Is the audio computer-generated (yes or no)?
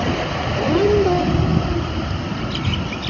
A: no